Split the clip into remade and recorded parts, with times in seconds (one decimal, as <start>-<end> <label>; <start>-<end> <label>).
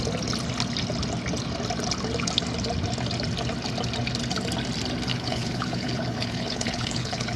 0.0-5.1 recorded; 5.1-7.4 remade